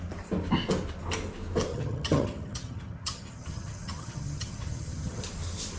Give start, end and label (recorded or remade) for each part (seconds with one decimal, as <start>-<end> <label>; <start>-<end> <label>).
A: 0.0-1.7 recorded; 1.7-5.2 remade; 5.2-5.8 recorded